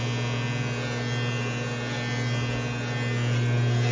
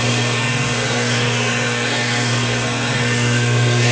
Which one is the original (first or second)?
first